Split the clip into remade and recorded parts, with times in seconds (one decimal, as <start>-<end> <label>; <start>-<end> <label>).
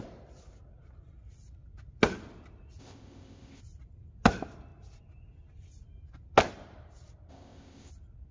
0.0-2.8 recorded; 2.8-3.6 remade; 3.6-7.3 recorded; 7.3-7.9 remade; 7.9-8.3 recorded